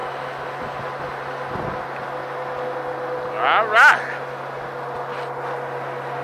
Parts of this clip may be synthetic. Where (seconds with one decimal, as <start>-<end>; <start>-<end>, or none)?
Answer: none